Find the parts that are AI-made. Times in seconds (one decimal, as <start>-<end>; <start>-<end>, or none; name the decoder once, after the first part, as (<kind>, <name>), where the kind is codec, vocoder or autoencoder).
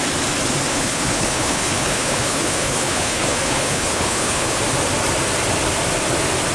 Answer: 0.7-4.6 (codec, HILCodec)